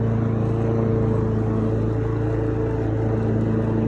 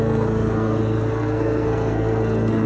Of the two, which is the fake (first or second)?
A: second